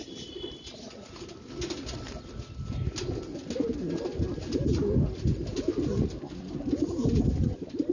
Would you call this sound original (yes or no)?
yes